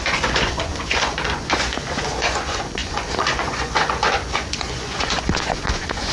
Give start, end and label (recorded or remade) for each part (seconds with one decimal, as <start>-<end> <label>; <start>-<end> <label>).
0.0-6.1 remade